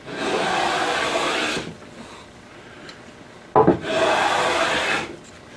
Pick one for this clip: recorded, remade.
recorded